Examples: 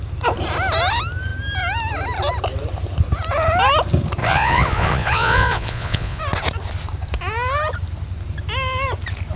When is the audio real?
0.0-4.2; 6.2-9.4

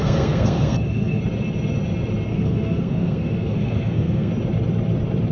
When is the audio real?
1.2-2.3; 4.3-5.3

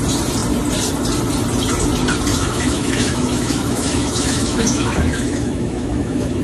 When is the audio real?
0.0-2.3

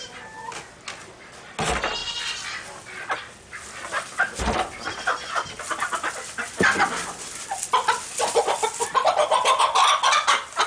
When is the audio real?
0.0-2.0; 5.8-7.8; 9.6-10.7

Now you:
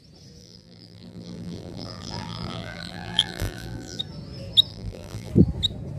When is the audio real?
0.0-0.4; 4.0-4.7; 5.3-6.0

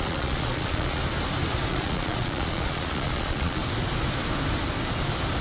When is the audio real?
1.0-1.7; 3.6-5.4